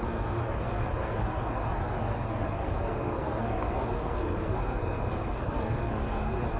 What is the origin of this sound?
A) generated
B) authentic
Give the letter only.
A